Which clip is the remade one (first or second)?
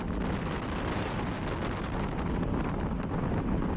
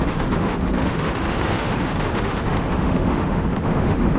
second